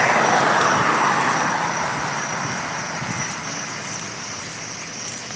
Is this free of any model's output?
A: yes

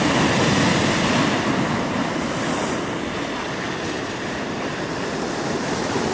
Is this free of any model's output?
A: yes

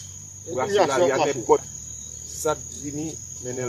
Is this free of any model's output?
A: no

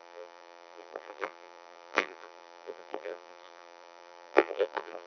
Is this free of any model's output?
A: no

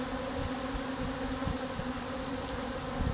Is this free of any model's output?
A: yes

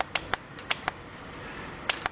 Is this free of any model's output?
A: yes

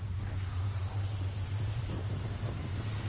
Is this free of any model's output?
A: yes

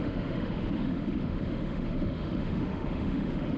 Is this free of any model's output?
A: no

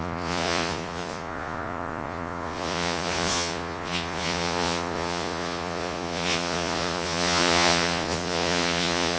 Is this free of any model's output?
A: no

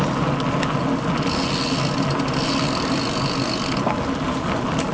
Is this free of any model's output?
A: yes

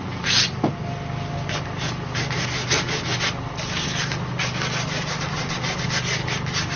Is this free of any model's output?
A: yes